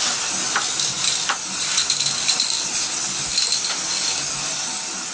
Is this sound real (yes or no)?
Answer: yes